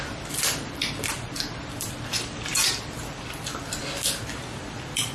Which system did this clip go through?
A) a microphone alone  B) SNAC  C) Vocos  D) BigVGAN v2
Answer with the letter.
D